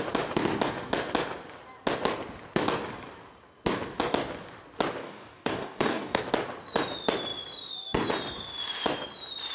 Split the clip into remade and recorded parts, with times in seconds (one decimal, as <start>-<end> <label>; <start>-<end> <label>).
0.0-5.0 recorded; 5.0-6.2 remade; 6.2-9.5 recorded